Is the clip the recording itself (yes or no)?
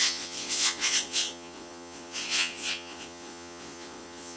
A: no